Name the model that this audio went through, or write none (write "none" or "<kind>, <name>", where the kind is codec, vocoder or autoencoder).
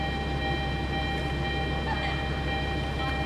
vocoder, BigVGAN v2